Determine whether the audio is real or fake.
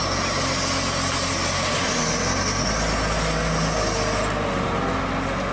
real